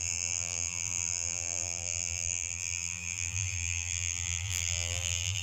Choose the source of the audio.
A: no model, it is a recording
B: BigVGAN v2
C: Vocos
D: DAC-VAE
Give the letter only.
B